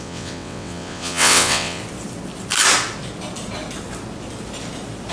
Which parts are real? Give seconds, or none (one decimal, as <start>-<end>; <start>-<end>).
1.8-5.1